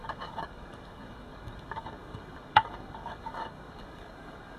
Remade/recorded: remade